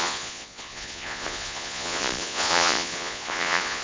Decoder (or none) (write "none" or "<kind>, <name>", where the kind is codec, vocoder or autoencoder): vocoder, Vocos